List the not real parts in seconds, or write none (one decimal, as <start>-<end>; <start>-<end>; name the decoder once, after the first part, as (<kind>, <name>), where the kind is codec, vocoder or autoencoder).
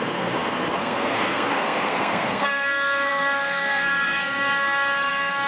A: 0.0-5.5 (codec, SNAC)